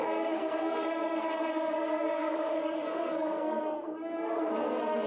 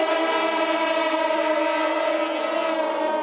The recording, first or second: second